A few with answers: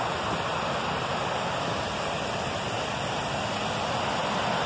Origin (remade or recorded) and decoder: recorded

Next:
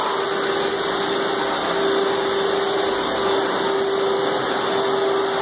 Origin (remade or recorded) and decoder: recorded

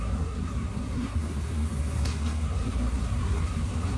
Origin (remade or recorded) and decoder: remade, codec, SNAC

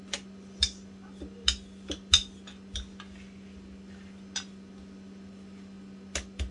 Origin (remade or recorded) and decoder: recorded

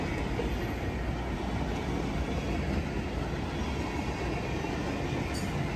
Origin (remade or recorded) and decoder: recorded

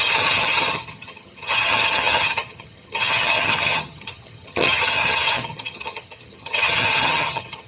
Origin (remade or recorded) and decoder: remade, vocoder, HiFi-GAN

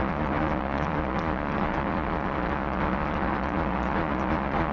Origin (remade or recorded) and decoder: remade, vocoder, Vocos